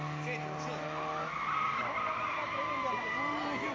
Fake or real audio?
real